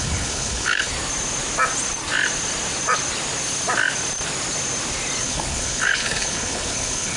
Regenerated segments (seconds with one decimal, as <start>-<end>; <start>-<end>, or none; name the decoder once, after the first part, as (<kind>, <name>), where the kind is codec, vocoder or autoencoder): 0.0-0.9 (codec, HILCodec); 5.2-7.2